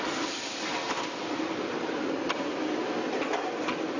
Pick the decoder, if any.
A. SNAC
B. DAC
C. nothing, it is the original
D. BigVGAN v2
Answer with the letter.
C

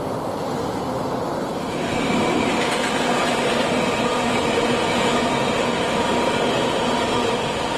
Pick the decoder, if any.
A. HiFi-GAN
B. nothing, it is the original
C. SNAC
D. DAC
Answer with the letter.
B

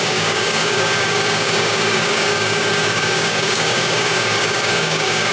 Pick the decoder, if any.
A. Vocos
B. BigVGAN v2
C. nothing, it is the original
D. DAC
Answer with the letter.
D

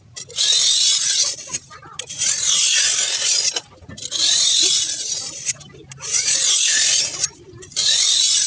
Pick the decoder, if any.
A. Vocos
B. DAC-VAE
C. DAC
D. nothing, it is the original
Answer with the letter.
D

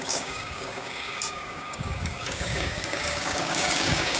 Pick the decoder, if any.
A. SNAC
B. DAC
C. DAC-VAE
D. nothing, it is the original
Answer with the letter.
B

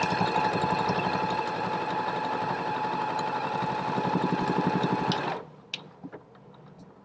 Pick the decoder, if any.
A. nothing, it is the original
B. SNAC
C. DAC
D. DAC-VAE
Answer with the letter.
A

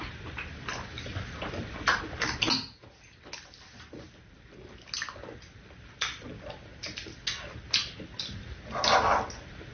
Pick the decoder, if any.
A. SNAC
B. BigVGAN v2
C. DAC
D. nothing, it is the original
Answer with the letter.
D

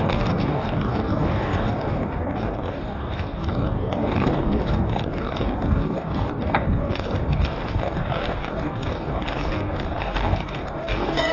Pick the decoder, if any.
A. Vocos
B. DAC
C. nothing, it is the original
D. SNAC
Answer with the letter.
B